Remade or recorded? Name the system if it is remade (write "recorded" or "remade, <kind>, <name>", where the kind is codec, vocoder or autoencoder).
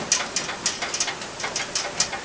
recorded